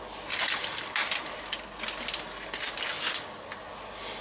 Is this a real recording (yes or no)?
yes